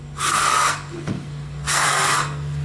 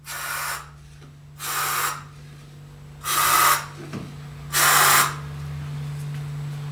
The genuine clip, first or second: second